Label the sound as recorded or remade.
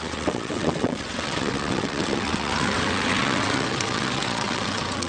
remade